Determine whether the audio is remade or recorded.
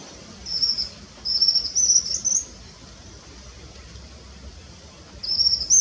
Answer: recorded